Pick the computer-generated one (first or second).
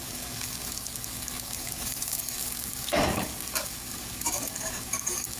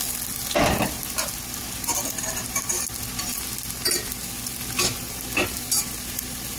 first